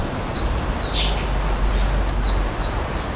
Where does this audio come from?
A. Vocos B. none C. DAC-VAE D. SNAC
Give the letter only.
B